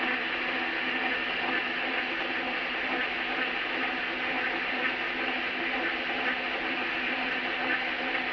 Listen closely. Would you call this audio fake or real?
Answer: real